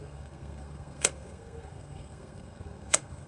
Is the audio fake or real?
fake